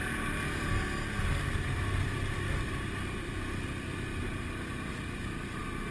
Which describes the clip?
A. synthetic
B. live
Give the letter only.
B